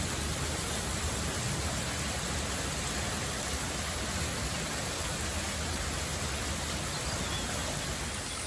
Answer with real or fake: real